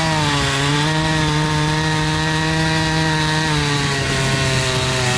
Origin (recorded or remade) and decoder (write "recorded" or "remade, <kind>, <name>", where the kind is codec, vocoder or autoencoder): recorded